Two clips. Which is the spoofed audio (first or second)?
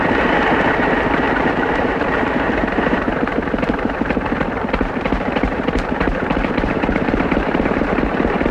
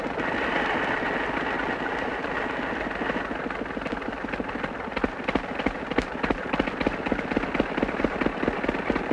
first